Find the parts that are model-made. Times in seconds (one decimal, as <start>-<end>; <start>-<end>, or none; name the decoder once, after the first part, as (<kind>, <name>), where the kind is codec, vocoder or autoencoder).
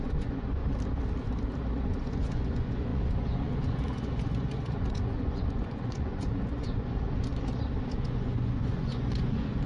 0.0-0.6 (vocoder, Vocos); 1.8-7.3; 7.9-9.7